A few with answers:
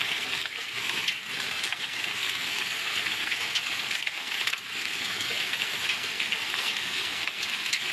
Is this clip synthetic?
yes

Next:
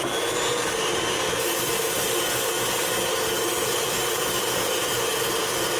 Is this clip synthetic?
no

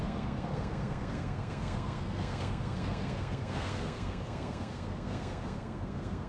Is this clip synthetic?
yes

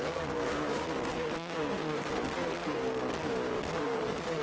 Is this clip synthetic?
yes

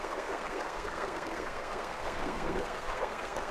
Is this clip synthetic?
yes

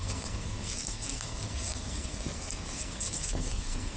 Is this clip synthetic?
yes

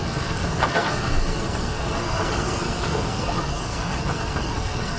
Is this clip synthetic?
yes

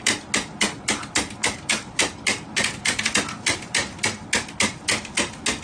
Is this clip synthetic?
no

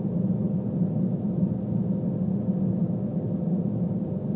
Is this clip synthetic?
no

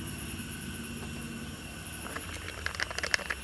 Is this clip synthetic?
no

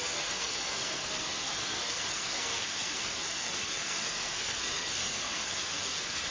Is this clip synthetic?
yes